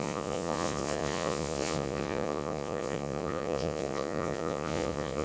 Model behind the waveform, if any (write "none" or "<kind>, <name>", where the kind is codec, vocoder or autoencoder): vocoder, Vocos